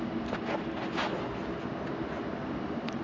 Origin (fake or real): real